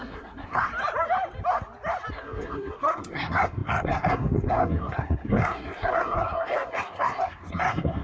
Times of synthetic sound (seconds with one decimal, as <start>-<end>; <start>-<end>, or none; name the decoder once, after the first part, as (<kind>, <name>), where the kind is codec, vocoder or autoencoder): 0.0-0.7 (codec, SNAC); 2.1-8.0